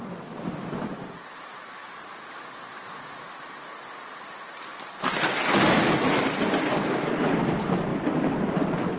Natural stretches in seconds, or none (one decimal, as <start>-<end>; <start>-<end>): none